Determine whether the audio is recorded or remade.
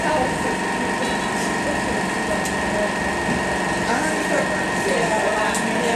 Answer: recorded